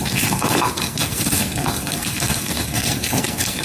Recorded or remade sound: remade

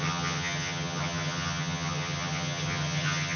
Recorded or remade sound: remade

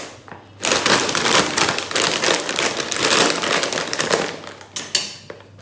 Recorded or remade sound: recorded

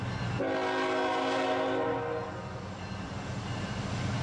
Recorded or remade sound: recorded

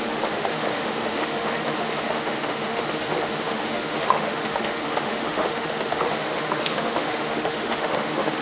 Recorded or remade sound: remade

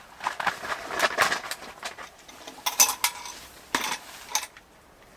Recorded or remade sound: recorded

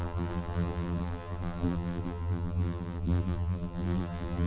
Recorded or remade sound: remade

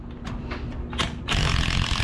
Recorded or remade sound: recorded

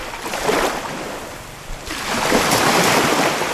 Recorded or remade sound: recorded